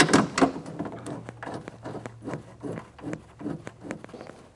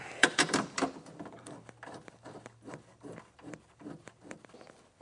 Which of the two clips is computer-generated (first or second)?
second